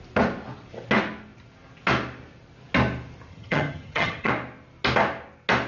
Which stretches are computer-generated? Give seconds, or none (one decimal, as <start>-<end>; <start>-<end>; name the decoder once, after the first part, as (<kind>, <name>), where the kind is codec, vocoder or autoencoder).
3.3-4.3 (vocoder, HiFi-GAN)